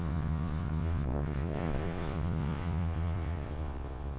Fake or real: fake